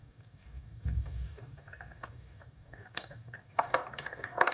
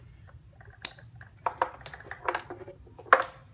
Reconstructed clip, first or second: first